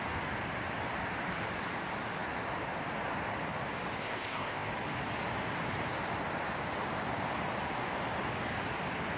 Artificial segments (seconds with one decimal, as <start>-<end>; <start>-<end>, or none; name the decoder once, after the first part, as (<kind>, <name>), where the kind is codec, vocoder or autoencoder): 4.0-4.7 (codec, ZipCodec)